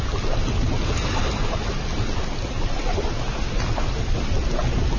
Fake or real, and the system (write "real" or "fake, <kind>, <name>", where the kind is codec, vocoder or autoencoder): real